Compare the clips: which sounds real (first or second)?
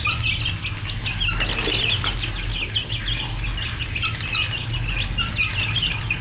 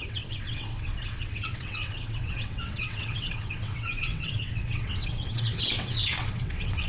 first